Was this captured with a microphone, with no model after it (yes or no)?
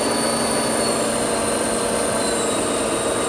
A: yes